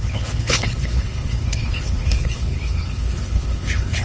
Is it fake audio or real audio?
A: fake